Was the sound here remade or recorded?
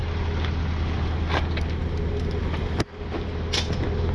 recorded